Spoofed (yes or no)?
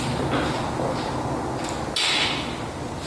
no